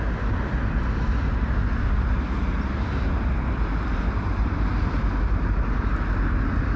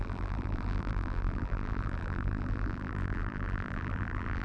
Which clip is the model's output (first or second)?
second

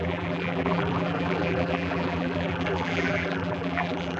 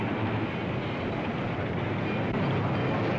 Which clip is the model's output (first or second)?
first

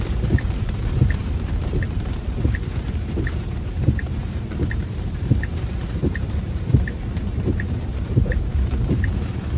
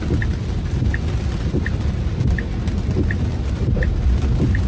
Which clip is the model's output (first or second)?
first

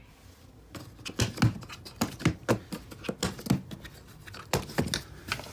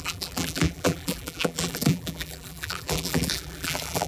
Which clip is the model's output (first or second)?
second